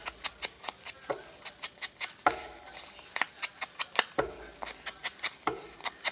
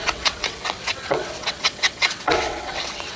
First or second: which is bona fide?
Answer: first